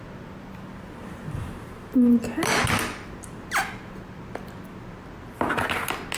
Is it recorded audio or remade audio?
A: recorded